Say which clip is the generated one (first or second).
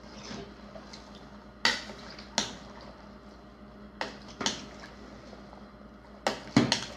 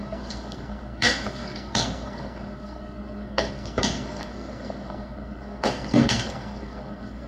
second